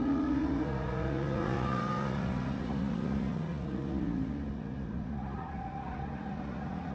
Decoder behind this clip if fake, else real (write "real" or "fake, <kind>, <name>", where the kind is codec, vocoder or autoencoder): fake, vocoder, Vocos